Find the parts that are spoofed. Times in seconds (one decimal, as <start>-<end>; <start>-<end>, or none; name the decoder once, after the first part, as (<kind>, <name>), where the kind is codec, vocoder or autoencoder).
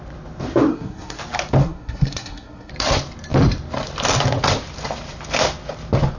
0.7-1.2 (codec, SNAC); 1.6-2.7